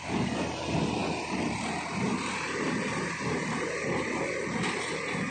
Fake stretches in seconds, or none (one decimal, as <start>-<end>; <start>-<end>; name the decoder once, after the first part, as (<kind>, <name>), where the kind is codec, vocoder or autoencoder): none